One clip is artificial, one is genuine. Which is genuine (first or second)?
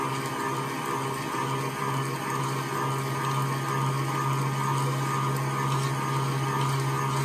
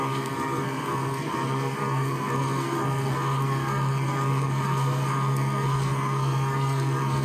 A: first